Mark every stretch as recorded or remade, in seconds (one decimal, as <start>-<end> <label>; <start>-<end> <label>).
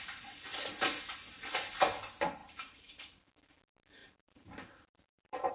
0.0-2.4 recorded; 2.4-3.0 remade; 3.0-4.0 recorded; 4.0-5.5 remade